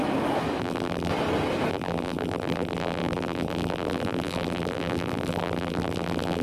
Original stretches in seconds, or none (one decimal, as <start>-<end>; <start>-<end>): 0.0-0.6; 1.1-1.7